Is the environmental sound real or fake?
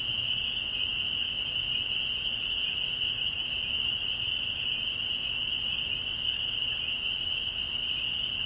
real